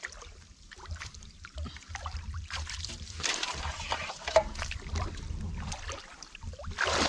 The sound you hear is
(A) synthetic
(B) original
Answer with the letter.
A